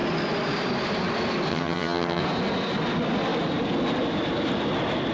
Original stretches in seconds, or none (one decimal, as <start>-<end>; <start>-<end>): 0.0-1.5; 2.2-5.1